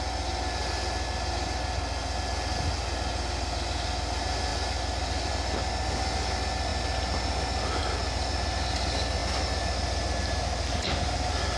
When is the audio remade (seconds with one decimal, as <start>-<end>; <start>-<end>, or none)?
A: none